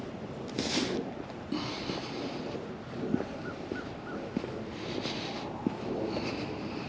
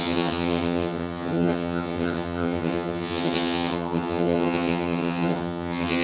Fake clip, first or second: second